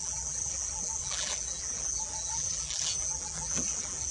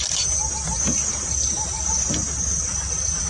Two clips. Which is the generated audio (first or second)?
first